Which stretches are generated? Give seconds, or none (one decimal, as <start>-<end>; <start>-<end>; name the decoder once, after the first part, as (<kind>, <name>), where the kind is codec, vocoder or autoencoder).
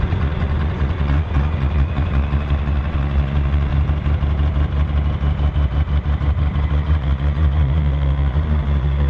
0.0-3.7 (vocoder, Vocos); 6.7-9.1